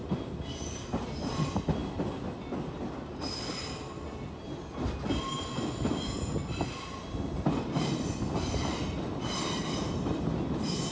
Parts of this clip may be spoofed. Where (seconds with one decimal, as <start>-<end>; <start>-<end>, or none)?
none